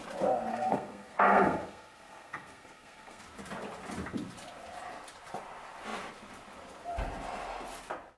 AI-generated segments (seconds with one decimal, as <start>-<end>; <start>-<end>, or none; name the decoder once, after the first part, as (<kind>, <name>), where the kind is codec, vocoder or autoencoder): 0.5-3.2 (codec, SNAC)